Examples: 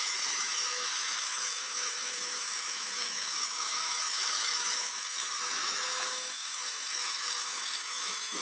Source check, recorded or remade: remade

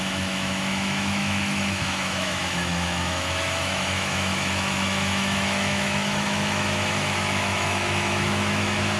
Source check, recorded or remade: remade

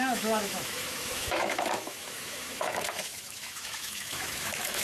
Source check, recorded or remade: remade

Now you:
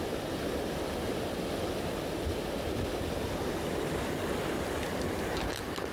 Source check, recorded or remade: recorded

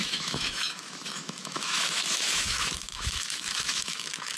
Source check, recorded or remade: remade